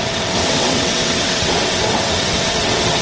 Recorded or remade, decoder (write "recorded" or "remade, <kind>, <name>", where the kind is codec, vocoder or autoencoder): remade, vocoder, WaveNeXt